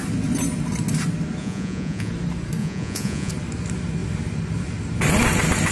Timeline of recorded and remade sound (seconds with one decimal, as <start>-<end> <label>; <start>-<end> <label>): 0.0-1.4 recorded; 1.4-2.1 remade; 2.1-2.6 recorded; 2.6-3.3 remade; 3.3-5.7 recorded